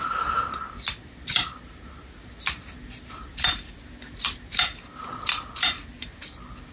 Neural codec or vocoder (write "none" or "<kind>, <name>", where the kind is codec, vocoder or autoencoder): none